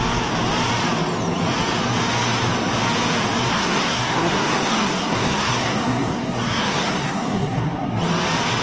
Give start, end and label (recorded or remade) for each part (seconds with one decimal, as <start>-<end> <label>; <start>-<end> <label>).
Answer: 0.0-3.5 recorded; 3.5-8.0 remade; 8.0-8.6 recorded